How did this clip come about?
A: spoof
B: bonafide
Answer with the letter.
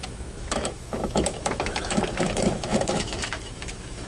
A